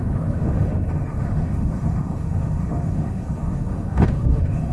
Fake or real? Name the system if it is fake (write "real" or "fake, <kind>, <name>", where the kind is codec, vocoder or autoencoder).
fake, autoencoder, DAC-VAE